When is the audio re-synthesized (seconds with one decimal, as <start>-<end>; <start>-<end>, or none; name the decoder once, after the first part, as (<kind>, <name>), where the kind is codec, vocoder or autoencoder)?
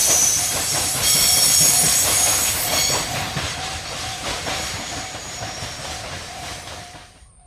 0.0-7.5 (vocoder, BigVGAN v2)